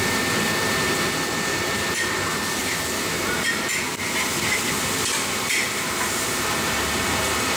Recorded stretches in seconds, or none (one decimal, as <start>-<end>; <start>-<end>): 0.0-7.6